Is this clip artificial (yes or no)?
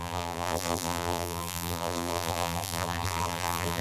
yes